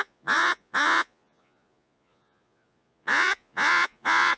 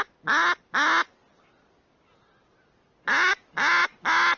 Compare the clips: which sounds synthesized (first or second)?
first